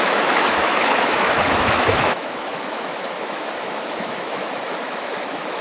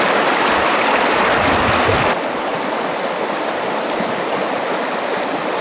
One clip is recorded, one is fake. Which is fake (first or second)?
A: first